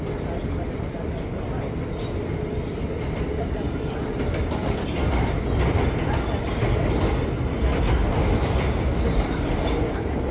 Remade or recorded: recorded